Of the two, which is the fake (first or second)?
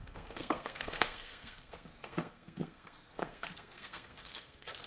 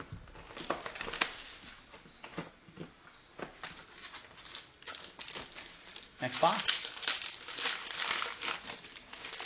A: first